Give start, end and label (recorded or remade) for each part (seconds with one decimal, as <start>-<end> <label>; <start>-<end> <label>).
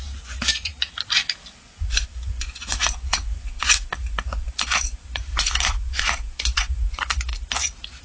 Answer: 0.0-0.7 remade; 0.7-1.6 recorded; 1.6-7.3 remade; 7.3-8.0 recorded